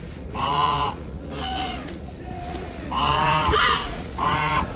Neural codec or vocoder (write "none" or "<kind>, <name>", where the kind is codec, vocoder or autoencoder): vocoder, Vocos